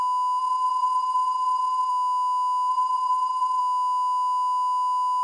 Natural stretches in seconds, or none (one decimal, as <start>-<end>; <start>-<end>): 0.0-0.4; 1.9-2.7; 3.6-5.2